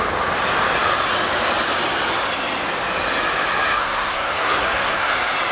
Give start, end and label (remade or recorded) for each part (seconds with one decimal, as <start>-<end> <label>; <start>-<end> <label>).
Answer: 0.0-3.8 recorded; 3.8-5.1 remade; 5.1-5.5 recorded